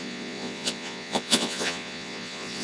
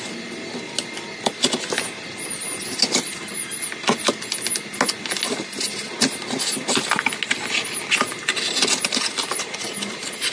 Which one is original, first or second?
second